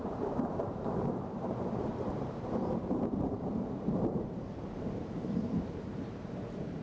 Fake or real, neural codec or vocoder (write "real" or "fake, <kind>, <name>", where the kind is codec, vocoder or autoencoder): fake, vocoder, BigVGAN v2